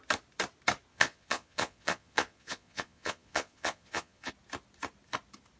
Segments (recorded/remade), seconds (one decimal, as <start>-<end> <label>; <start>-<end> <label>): 0.0-0.9 recorded; 0.9-4.3 remade; 4.3-5.6 recorded